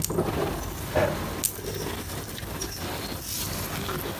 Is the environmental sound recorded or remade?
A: recorded